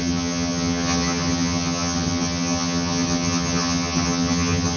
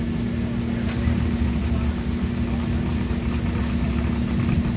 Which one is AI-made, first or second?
first